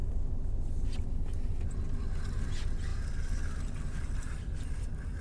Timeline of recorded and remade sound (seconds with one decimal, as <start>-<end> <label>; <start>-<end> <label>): 0.0-5.2 recorded